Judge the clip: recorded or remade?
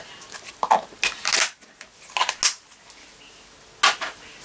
recorded